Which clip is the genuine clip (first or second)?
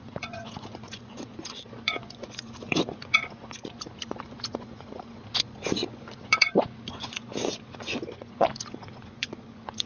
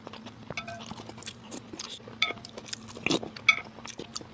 second